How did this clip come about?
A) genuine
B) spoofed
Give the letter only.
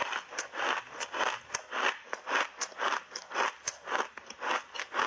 A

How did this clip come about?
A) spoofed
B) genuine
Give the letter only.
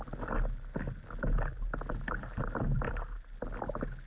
B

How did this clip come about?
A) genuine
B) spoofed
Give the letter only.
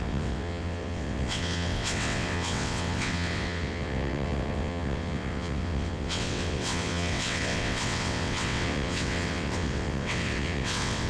B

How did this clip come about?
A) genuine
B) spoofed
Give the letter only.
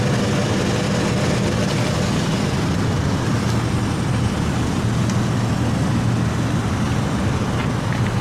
A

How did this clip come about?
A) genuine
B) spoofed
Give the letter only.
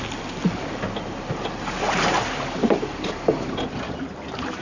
A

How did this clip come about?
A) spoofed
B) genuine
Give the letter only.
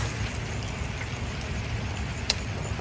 A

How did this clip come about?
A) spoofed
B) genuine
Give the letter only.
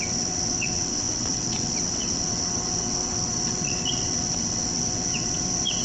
A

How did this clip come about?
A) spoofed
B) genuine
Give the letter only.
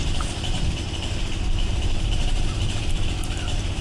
A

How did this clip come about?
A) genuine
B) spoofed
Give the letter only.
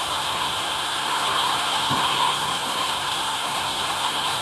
B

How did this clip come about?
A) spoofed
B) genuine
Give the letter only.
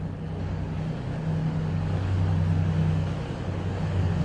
A